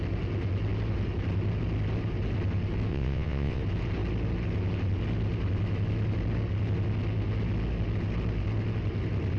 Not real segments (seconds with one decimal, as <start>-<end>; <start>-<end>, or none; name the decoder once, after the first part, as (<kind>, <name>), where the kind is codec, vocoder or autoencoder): 2.9-3.6 (vocoder, WaveNeXt)